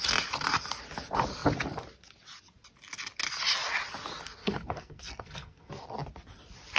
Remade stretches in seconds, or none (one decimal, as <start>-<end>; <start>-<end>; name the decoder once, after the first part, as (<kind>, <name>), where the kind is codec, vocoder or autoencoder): 4.4-5.7 (codec, SNAC)